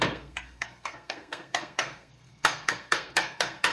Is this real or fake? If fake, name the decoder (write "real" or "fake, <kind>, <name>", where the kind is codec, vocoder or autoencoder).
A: fake, codec, SNAC